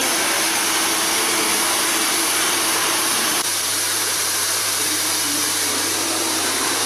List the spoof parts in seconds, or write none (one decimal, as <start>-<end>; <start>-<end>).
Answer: 1.5-2.2; 2.8-6.9